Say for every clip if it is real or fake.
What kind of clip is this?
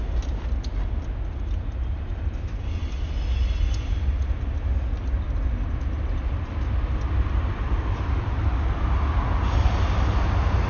real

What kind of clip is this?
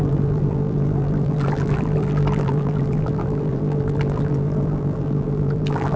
fake